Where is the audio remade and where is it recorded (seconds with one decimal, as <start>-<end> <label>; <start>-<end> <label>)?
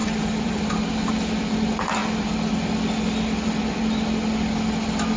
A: 0.0-0.8 remade; 0.8-5.2 recorded